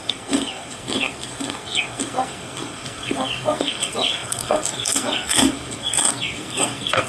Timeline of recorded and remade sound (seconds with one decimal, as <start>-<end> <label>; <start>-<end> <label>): 0.0-7.1 remade